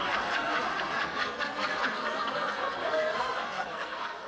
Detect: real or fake fake